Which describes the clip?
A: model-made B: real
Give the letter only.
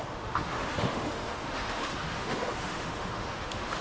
A